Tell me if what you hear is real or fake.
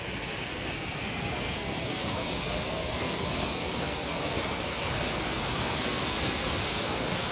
fake